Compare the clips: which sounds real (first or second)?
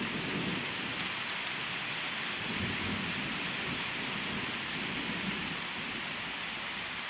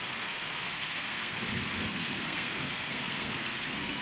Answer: first